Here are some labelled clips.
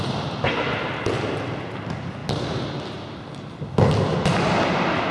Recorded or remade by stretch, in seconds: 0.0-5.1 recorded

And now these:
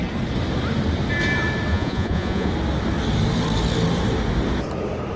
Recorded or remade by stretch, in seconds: 0.0-1.7 recorded; 1.7-2.5 remade; 2.5-5.2 recorded

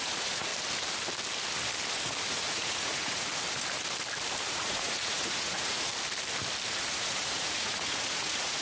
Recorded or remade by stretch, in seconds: 0.0-0.5 remade; 0.5-2.3 recorded; 2.3-3.3 remade; 3.3-4.5 recorded; 4.5-5.9 remade; 5.9-6.7 recorded; 6.7-8.6 remade